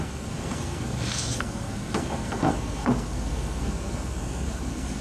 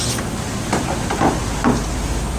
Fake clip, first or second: first